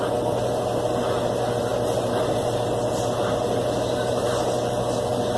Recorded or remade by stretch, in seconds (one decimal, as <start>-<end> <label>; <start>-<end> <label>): 0.0-5.4 recorded